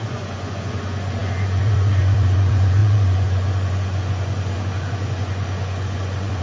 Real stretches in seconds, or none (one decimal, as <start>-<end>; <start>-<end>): none